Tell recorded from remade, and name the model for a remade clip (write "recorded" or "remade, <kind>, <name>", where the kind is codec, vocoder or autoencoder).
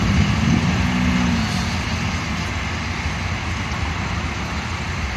recorded